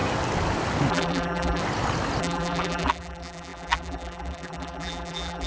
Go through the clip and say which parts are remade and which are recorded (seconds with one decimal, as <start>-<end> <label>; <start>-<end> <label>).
0.0-0.9 recorded; 0.9-1.6 remade; 1.6-2.2 recorded; 2.2-5.5 remade